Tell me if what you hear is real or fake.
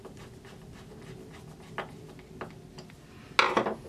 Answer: real